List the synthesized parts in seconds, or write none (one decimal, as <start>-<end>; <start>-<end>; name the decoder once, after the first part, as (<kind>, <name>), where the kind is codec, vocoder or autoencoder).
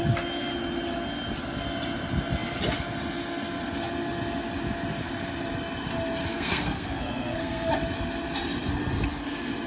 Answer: 6.3-7.7 (codec, SNAC)